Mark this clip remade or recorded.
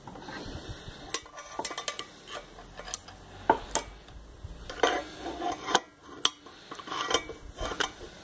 recorded